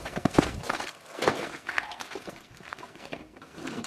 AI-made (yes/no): yes